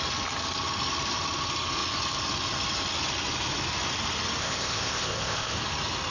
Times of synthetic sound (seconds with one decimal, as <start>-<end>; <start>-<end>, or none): 4.4-5.6